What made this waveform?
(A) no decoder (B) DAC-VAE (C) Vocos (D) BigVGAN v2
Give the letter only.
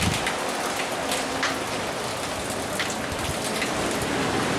A